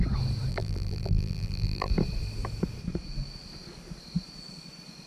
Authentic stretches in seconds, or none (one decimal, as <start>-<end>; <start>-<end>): 0.0-0.5; 1.9-5.1